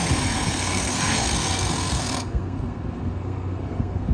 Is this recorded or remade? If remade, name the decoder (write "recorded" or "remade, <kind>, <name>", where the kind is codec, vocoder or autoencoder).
remade, codec, SNAC